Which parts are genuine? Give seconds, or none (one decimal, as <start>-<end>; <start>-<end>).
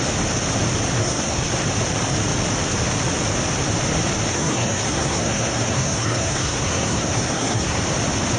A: 0.0-1.0; 1.5-4.3; 7.8-8.4